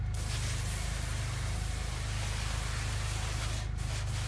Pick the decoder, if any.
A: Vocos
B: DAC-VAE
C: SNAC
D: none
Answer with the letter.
D